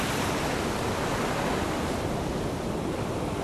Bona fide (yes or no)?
no